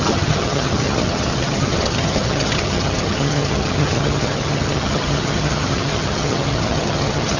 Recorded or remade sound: remade